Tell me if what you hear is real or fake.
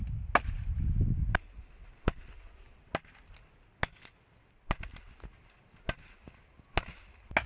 real